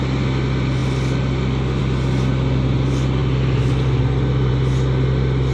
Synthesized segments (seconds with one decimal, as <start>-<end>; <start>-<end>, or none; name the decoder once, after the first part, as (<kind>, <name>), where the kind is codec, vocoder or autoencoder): none